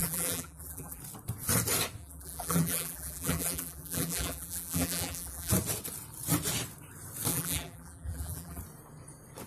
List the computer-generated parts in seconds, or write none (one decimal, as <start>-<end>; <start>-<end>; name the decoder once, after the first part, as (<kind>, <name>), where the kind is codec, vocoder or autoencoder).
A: 0.0-1.0 (vocoder, BigVGAN v2); 2.0-5.5; 7.3-8.6